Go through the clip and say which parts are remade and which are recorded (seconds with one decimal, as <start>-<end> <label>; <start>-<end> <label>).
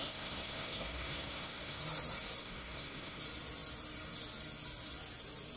0.0-1.8 remade; 1.8-2.4 recorded; 2.4-3.2 remade; 3.2-5.6 recorded